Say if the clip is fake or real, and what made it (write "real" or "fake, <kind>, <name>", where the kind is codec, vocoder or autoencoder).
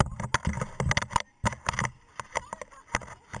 real